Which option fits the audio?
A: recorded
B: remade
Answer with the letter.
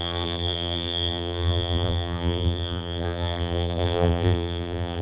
B